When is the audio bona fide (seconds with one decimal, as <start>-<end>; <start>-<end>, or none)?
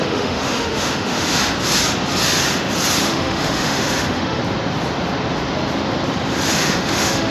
1.4-3.0; 4.4-6.5